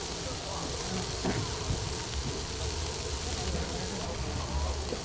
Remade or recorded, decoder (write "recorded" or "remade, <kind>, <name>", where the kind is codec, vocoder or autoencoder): recorded